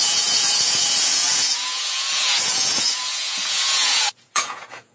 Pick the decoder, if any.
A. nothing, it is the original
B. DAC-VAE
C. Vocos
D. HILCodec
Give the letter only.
C